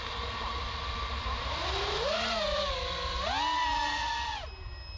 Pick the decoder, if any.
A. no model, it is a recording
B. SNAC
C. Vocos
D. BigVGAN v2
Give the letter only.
A